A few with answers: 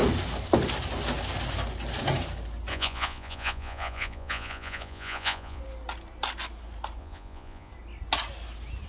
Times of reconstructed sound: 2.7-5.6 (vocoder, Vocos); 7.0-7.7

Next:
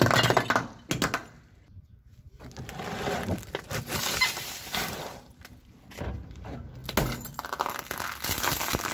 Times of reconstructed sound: none